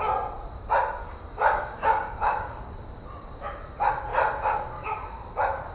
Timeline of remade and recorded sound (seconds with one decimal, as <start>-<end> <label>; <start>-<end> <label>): 0.0-1.0 recorded; 1.0-2.7 remade; 2.7-5.7 recorded